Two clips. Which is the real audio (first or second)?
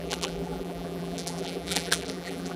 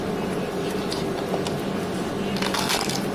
second